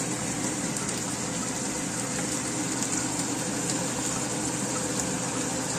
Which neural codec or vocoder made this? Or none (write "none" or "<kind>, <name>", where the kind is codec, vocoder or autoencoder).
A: none